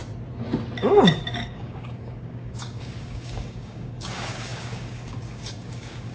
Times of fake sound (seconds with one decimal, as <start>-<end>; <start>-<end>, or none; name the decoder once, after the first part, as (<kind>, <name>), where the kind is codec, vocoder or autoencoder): 0.8-6.1 (codec, DAC)